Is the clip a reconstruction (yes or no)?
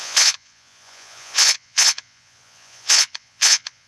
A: yes